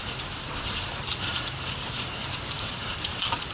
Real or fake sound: fake